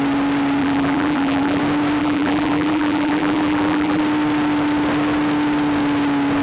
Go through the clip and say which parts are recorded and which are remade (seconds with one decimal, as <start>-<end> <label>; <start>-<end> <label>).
0.0-0.6 recorded; 0.6-1.6 remade; 1.6-2.0 recorded; 2.0-4.0 remade; 4.0-6.4 recorded